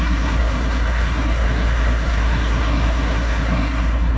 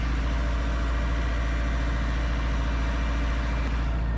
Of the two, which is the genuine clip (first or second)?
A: second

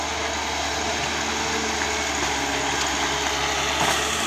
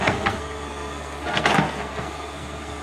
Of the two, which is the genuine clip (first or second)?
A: first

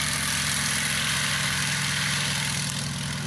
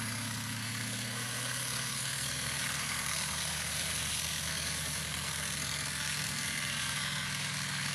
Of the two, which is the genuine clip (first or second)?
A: first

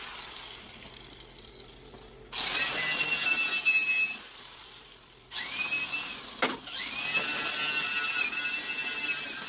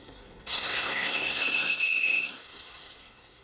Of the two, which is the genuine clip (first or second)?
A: first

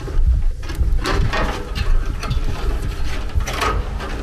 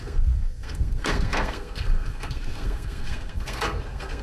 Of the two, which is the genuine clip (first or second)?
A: first